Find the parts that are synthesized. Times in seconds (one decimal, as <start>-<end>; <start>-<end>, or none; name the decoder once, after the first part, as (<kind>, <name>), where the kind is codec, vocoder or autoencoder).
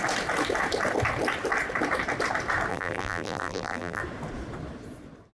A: 2.7-4.0 (vocoder, BigVGAN v2)